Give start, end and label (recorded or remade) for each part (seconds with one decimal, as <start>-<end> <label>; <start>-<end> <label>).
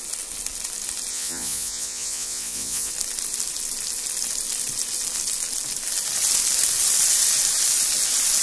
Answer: 0.0-1.1 recorded; 1.1-2.9 remade; 2.9-8.4 recorded